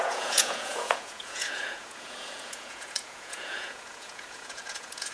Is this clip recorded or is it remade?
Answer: remade